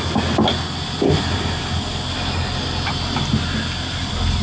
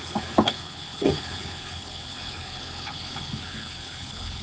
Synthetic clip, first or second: second